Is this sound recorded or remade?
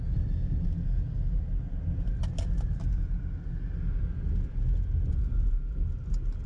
recorded